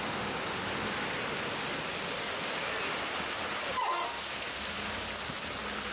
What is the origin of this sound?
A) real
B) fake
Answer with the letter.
A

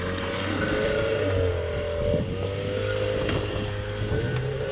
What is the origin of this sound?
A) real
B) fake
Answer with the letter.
A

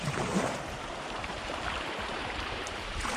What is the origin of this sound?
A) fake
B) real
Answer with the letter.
A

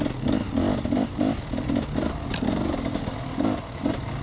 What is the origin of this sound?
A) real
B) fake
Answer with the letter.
A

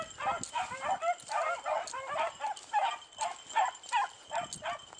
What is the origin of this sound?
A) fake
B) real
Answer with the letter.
B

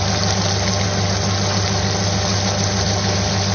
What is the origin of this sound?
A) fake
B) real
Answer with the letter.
B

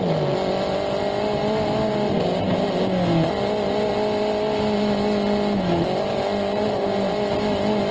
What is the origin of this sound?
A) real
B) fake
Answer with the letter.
A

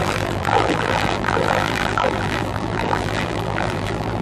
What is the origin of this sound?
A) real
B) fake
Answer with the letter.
B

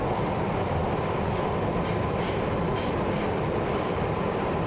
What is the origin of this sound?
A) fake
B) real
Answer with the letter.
A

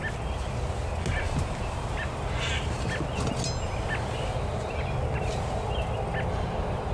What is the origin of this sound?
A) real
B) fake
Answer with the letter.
A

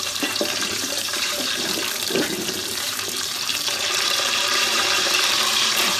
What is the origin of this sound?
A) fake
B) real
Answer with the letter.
A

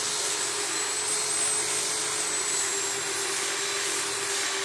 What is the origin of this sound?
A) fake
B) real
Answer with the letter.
B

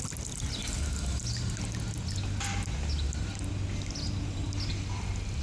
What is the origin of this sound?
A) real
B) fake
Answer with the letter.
A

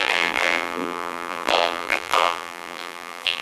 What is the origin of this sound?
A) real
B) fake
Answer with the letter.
B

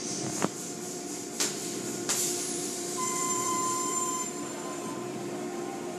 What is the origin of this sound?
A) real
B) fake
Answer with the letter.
B